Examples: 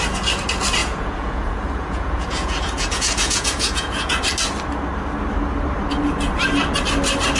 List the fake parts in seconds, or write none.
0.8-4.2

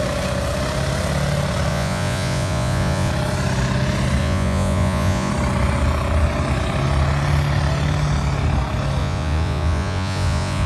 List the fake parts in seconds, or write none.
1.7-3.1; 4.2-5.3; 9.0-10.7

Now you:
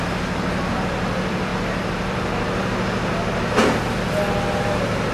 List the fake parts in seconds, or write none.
none

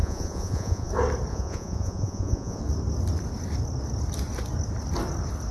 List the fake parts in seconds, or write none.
0.0-0.9; 1.3-2.6

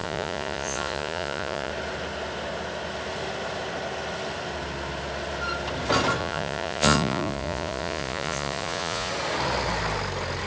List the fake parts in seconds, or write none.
0.0-1.7; 6.2-9.1